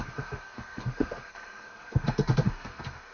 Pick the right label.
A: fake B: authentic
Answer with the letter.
A